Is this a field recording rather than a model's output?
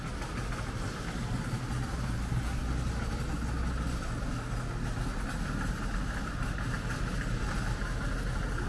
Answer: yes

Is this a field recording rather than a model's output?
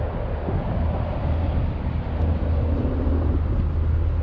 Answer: yes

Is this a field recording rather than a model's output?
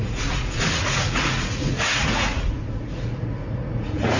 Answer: no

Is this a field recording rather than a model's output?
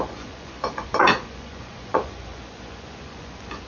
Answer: no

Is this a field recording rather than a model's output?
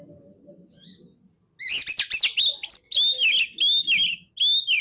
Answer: yes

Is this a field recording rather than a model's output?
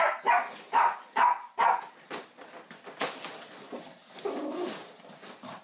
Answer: yes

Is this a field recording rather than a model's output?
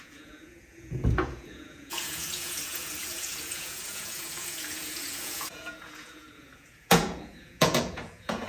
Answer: no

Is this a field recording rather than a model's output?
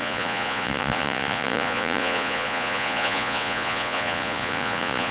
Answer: no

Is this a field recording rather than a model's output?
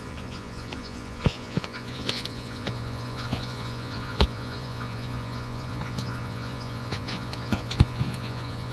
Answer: no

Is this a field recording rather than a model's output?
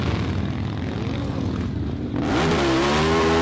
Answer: yes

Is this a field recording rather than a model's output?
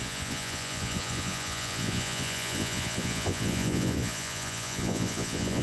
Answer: no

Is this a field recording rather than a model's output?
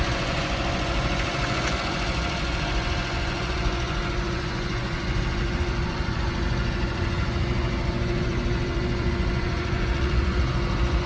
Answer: no